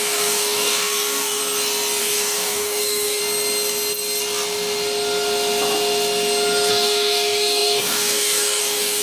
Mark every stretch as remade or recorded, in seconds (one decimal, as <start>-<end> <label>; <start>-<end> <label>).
0.0-1.4 remade; 1.4-2.0 recorded; 2.0-3.2 remade; 3.2-6.7 recorded; 6.7-9.0 remade